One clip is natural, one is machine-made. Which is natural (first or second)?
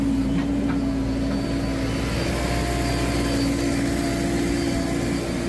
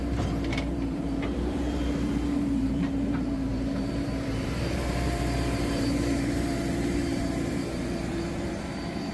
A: first